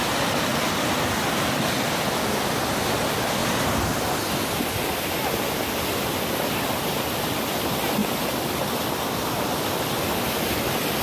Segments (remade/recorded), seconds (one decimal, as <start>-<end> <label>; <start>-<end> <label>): 0.0-11.0 recorded